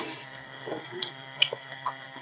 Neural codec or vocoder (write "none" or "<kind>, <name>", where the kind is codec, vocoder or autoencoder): codec, SNAC